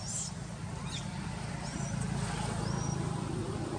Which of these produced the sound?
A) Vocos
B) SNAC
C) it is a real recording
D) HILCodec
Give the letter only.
C